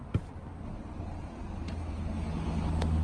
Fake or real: real